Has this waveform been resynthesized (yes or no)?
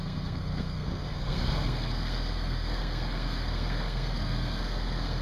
yes